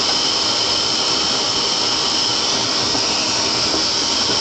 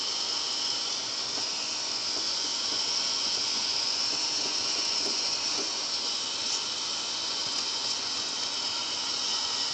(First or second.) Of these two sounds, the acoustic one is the first